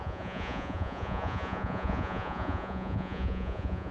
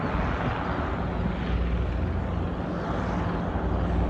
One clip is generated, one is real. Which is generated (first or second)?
first